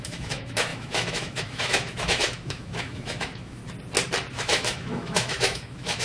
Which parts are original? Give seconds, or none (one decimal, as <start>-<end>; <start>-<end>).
3.6-4.3